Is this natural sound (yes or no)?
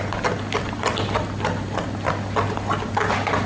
yes